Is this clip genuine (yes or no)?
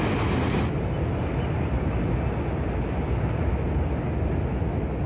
yes